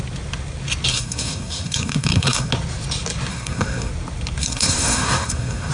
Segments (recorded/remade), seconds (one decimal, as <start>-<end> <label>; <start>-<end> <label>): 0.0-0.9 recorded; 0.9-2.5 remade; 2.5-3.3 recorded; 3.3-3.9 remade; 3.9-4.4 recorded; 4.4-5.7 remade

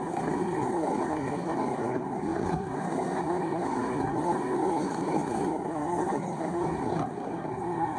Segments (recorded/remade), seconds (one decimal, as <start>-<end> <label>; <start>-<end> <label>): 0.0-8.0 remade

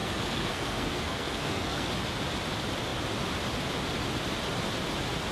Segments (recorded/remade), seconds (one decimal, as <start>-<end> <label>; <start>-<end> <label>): 0.0-1.9 remade; 1.9-5.3 recorded

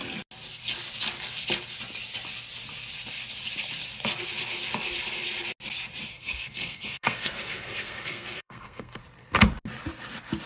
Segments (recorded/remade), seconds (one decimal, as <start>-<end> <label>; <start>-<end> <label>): 0.0-6.1 recorded; 6.1-9.0 remade; 9.0-10.5 recorded

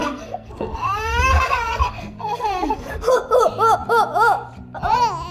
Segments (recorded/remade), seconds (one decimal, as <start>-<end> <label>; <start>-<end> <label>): 0.0-3.2 remade; 3.2-5.3 recorded